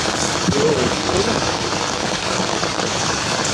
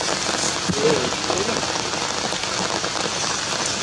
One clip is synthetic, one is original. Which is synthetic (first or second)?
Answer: first